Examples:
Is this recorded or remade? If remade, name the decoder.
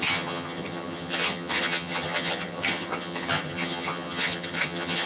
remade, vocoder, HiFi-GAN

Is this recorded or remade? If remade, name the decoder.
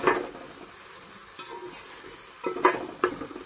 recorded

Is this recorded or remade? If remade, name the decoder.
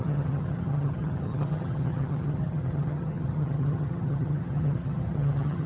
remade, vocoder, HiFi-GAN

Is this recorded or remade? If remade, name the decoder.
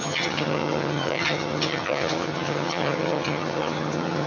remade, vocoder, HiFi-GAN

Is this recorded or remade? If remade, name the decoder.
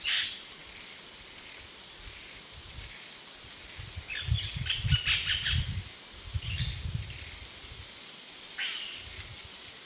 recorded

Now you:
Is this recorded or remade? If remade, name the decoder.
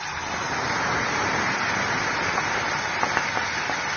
recorded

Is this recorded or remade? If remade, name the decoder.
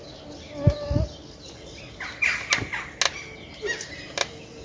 recorded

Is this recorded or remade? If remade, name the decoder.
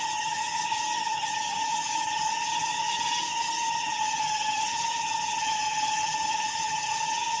remade, vocoder, HiFi-GAN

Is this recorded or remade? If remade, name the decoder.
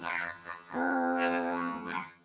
remade, vocoder, HiFi-GAN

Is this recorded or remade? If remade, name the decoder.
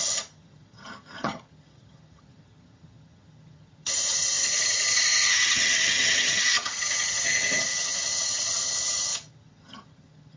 remade, vocoder, HiFi-GAN